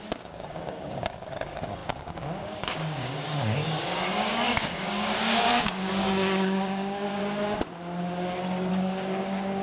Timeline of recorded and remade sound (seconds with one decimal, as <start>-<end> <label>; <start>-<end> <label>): 0.0-7.2 remade; 7.2-8.7 recorded; 8.7-9.6 remade